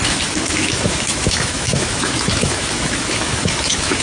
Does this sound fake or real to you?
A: fake